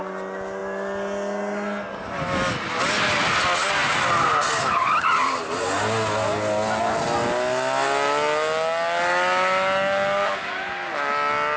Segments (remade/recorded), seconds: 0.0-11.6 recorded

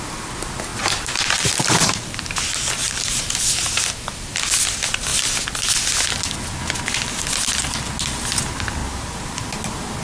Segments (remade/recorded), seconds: 0.0-0.7 recorded; 0.7-2.1 remade; 2.1-2.8 recorded; 2.8-3.6 remade; 3.6-8.8 recorded; 8.8-9.5 remade; 9.5-10.0 recorded

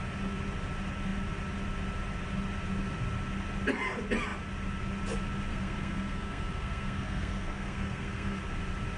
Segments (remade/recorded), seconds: 0.0-5.5 recorded; 5.5-8.4 remade; 8.4-9.0 recorded

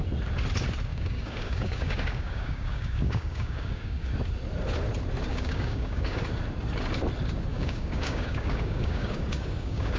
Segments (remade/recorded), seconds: 0.0-0.9 recorded; 0.9-4.1 remade; 4.1-5.3 recorded; 5.3-6.2 remade; 6.2-7.5 recorded; 7.5-10.0 remade

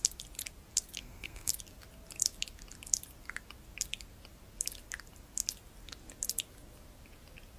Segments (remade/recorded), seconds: 0.0-1.0 recorded; 1.0-1.5 remade; 1.5-7.6 recorded